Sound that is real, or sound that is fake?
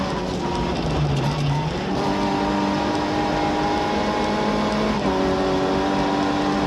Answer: real